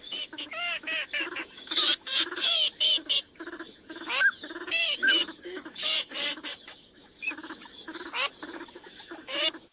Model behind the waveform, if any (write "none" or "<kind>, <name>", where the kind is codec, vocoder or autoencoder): autoencoder, DAC-VAE